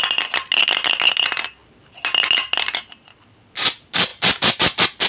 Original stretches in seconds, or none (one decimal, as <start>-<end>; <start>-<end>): 0.0-5.1